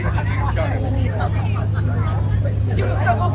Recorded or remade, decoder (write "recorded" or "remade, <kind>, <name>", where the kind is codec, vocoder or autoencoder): recorded